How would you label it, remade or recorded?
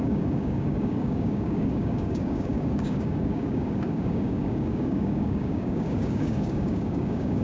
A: remade